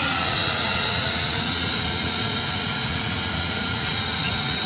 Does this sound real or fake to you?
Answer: fake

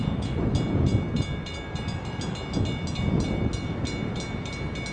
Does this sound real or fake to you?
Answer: real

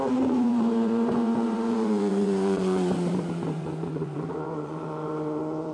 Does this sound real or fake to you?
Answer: fake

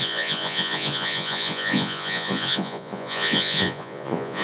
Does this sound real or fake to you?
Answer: fake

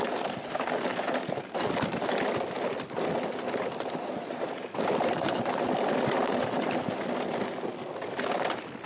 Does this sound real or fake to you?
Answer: real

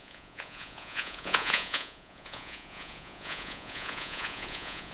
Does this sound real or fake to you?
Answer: fake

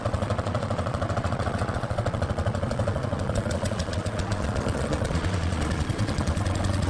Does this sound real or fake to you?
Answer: fake